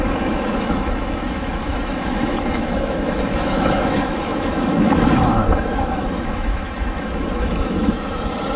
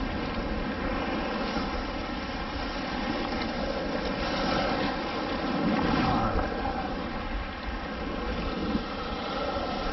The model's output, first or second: first